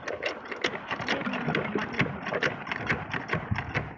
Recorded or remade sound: recorded